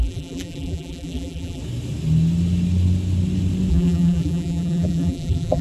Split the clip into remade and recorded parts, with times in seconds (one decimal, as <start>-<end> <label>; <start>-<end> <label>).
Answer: 0.0-1.6 remade; 1.6-3.7 recorded; 3.7-5.6 remade